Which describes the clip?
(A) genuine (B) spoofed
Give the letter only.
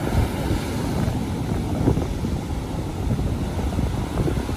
A